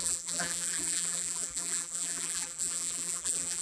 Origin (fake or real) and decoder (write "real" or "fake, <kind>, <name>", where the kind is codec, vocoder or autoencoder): fake, vocoder, BigVGAN v2